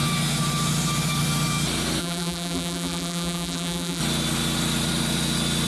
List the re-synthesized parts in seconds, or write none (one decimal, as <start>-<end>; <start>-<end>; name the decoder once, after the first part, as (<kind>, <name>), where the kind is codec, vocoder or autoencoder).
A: 2.0-4.0 (vocoder, BigVGAN v2)